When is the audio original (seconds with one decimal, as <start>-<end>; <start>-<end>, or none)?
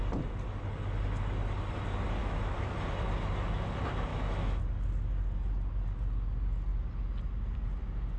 0.0-2.2; 2.7-4.1; 4.6-8.2